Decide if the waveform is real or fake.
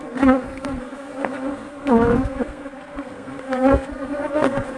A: fake